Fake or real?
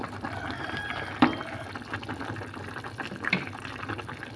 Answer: real